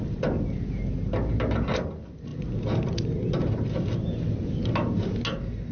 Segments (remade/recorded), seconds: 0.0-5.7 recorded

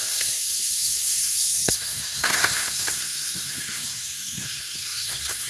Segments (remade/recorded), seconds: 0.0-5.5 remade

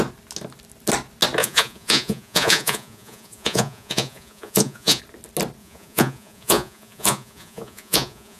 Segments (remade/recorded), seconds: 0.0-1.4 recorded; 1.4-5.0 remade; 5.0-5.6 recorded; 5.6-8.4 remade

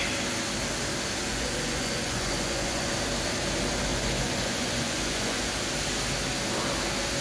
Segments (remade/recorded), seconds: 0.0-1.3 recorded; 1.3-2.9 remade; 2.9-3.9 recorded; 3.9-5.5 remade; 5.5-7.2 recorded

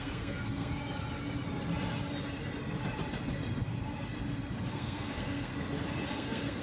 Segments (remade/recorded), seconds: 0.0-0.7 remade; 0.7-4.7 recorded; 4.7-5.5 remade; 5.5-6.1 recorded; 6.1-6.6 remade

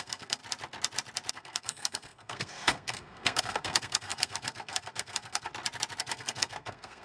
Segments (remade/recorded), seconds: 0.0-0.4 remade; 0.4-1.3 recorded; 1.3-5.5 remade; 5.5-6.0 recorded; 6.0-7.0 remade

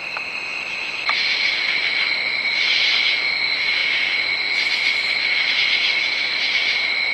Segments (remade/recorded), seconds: 0.0-7.1 recorded